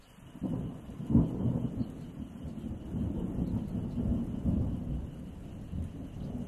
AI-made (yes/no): no